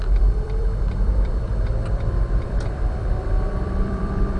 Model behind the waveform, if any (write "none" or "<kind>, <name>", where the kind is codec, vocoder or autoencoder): vocoder, BigVGAN v2